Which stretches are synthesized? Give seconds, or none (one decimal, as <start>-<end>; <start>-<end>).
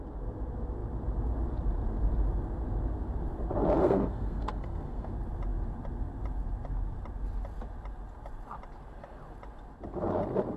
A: 3.8-5.1